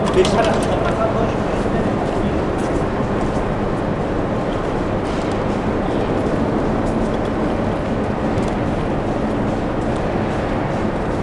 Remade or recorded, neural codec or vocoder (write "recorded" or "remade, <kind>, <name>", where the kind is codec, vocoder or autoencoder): recorded